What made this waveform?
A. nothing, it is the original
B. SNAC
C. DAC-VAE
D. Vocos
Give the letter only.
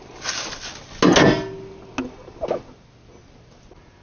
A